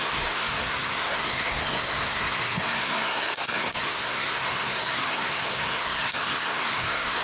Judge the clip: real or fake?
fake